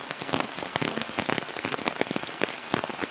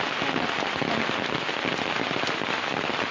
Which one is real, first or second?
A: second